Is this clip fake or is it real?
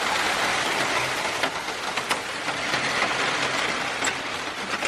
real